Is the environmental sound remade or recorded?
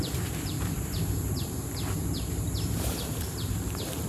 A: remade